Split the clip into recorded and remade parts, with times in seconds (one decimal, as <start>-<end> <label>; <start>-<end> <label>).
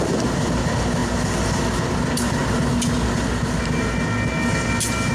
0.0-5.1 recorded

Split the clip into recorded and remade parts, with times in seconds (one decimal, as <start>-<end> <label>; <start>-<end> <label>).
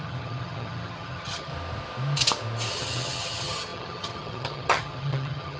0.0-1.5 remade; 1.5-2.7 recorded; 2.7-5.6 remade